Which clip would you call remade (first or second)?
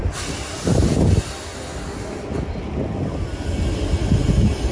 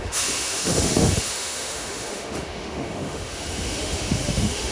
second